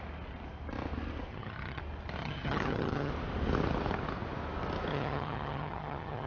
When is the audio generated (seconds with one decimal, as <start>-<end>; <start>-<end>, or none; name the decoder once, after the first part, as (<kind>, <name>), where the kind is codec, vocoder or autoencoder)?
1.3-1.8 (vocoder, HiFi-GAN); 2.2-3.1; 4.9-6.3